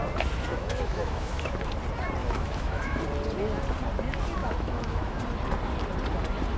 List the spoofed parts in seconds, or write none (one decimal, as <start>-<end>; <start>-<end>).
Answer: 0.5-1.7; 2.2-3.0; 4.4-5.2